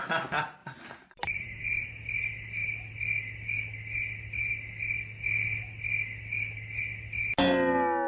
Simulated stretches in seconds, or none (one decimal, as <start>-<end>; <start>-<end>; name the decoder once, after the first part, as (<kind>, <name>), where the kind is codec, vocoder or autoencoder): 0.6-1.9 (vocoder, BigVGAN v2)